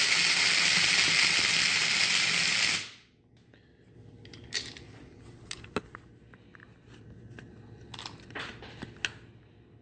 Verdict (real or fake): real